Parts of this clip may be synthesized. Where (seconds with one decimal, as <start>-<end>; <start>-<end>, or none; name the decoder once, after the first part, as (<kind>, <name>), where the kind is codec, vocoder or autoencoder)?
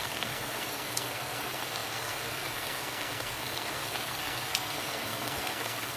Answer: 0.0-6.0 (codec, SNAC)